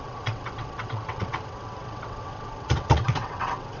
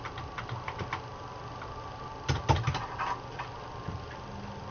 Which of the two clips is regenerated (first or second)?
first